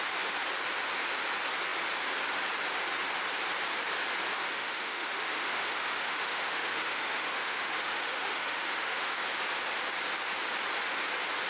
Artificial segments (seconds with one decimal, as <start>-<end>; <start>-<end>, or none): 4.4-9.2